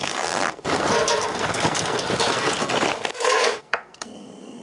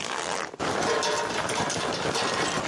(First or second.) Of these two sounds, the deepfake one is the first